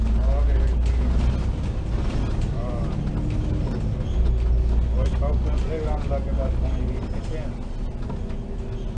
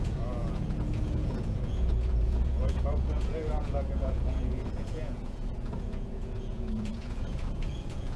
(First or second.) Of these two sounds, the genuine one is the first